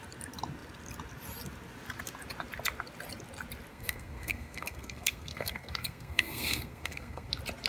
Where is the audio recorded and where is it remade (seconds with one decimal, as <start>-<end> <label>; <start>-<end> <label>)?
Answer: 0.0-3.7 recorded; 3.7-7.3 remade; 7.3-7.7 recorded